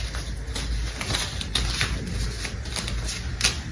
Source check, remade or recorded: recorded